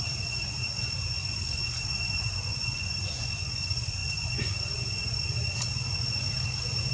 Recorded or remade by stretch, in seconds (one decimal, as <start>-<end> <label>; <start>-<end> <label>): 0.0-6.9 remade